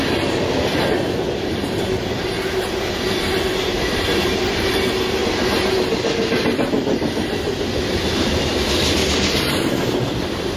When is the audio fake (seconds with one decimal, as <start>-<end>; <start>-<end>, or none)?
none